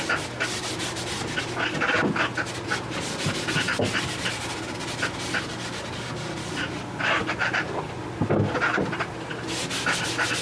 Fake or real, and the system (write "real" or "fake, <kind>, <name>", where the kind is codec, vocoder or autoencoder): real